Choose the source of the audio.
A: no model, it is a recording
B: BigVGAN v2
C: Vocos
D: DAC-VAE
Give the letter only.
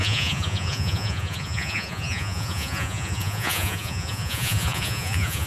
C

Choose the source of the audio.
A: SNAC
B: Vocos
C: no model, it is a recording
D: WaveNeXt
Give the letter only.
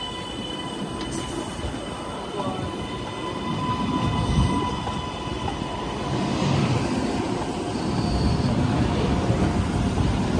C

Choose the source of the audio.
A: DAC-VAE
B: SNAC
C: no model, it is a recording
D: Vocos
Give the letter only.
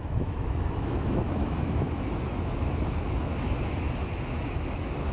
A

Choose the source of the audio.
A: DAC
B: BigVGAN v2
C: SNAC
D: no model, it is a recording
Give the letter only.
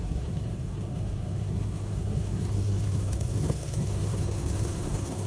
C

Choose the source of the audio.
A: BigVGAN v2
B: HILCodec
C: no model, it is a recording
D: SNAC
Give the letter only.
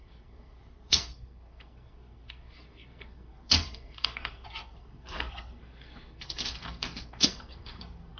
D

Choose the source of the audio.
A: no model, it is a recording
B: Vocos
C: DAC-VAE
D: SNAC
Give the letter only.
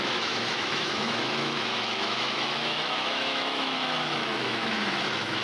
C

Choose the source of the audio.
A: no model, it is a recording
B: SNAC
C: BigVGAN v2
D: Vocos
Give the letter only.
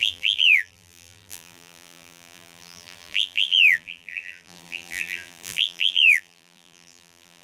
C